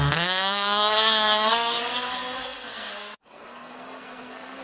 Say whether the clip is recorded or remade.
remade